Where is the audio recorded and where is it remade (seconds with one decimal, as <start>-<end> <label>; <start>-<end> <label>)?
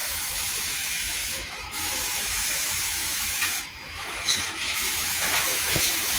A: 0.0-6.2 remade